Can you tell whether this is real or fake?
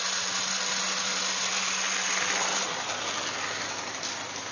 real